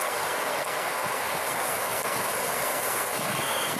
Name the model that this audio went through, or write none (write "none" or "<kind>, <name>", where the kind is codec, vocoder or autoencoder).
codec, SNAC